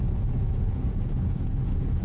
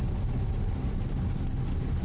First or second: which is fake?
first